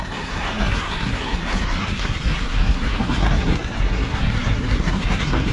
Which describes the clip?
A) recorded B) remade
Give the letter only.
B